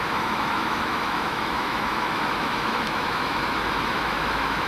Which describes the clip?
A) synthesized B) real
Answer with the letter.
A